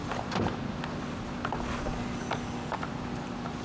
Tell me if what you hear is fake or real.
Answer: real